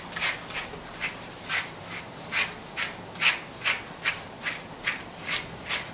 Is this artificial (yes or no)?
no